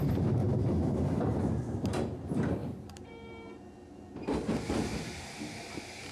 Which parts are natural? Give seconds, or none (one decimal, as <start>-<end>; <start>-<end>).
0.0-0.4; 1.4-2.6; 3.6-6.1